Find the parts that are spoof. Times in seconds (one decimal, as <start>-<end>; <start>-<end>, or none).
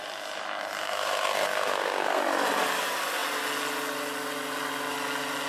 0.8-2.2